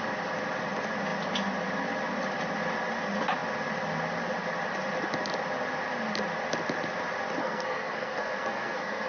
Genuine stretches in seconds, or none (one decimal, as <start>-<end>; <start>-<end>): 0.0-7.4